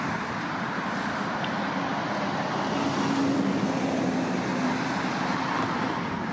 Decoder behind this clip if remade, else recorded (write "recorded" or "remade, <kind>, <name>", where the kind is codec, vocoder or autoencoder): recorded